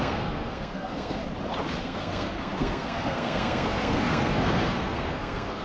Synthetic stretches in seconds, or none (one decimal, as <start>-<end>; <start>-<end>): 0.0-1.2; 1.8-5.6